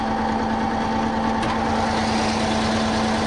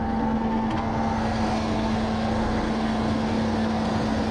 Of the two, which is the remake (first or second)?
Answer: second